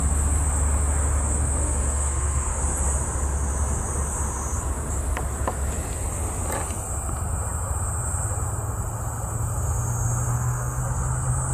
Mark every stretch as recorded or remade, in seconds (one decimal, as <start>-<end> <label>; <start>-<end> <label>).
0.0-1.6 recorded; 1.6-2.6 remade; 2.6-10.3 recorded; 10.3-10.8 remade; 10.8-11.5 recorded